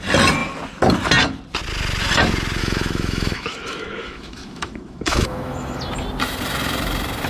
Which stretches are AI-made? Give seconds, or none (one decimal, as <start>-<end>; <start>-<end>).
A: 2.6-5.8